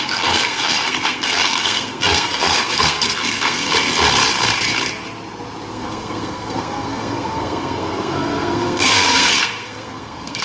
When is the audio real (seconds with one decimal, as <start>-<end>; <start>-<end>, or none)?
3.7-5.7